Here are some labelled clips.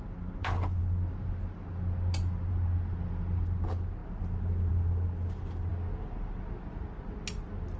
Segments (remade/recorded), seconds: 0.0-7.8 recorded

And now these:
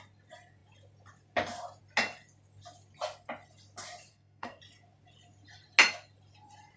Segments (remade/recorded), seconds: 0.0-4.1 recorded; 4.1-4.6 remade; 4.6-6.8 recorded